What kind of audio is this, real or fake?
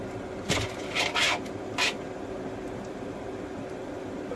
real